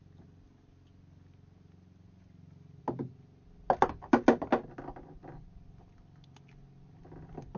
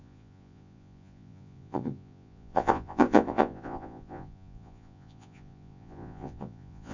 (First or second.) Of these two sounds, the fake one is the second